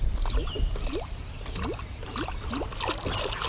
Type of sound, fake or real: real